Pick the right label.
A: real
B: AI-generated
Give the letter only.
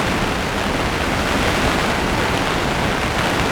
A